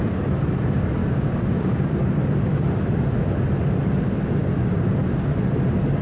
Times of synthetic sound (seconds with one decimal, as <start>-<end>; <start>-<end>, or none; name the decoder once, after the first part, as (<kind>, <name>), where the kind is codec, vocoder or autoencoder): 1.0-2.1 (codec, DAC)